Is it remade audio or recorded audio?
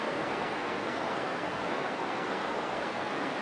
remade